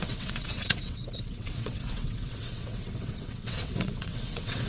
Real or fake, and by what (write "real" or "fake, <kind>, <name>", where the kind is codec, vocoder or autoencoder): fake, vocoder, WaveNeXt